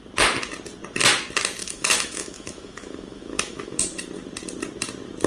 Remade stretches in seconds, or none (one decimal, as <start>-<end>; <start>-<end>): 1.6-3.8

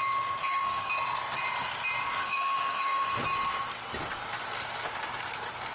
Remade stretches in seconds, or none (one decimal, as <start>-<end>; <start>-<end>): 0.4-0.9; 2.1-3.2

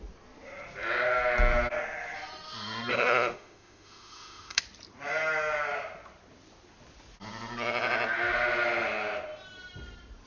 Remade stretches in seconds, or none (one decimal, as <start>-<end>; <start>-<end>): 2.9-4.6

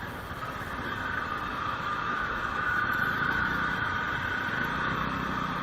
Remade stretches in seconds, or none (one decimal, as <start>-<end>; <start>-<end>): 1.5-4.0

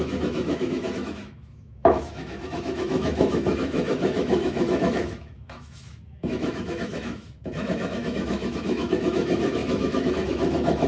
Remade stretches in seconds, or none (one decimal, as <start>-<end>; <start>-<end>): 0.0-10.9

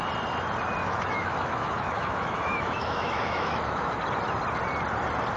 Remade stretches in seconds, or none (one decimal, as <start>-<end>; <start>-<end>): 0.8-4.0

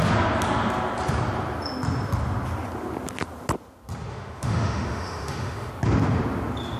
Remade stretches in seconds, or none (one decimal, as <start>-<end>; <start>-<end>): 4.1-5.7

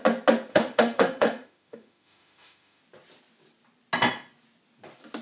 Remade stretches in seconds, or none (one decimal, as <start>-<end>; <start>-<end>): 0.5-2.8